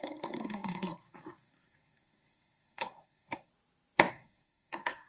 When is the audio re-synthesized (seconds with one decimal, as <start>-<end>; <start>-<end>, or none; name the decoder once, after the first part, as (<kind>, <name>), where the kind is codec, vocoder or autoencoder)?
0.0-3.5 (codec, SNAC); 4.1-5.1